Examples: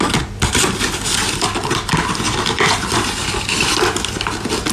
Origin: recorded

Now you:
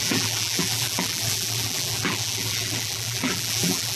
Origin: remade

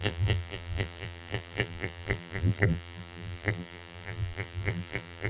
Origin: remade